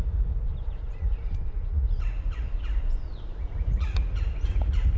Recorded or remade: remade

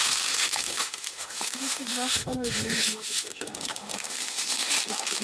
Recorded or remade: remade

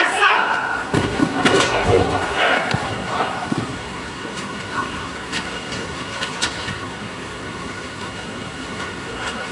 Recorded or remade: remade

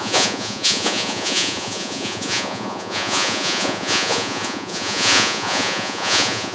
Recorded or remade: remade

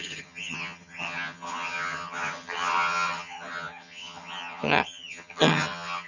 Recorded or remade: remade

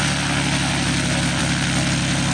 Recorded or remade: recorded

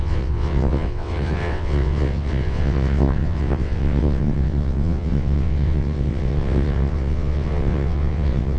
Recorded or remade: remade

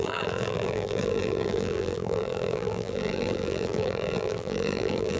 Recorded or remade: remade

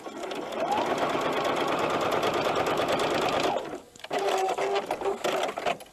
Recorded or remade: recorded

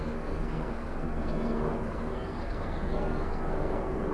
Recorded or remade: remade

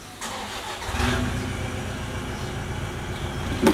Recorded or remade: recorded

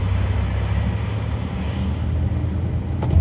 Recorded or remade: recorded